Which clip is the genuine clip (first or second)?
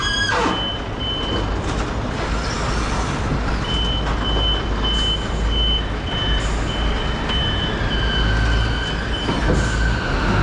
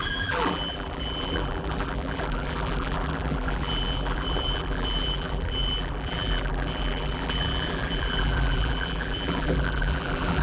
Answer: first